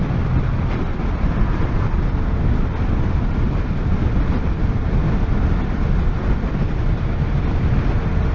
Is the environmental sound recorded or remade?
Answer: recorded